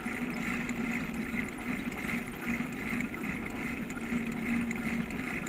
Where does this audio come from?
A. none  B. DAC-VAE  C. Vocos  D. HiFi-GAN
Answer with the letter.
A